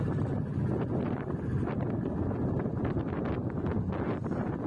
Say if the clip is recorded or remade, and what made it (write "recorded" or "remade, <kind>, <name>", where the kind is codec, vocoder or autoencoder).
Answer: recorded